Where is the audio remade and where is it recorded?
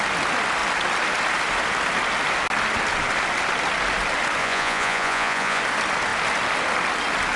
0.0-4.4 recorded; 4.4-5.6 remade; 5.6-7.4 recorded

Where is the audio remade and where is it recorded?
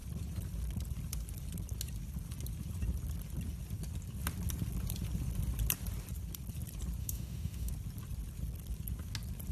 0.0-7.0 recorded; 7.0-7.7 remade; 7.7-9.5 recorded